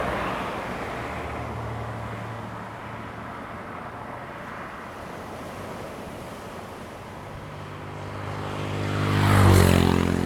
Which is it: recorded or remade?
recorded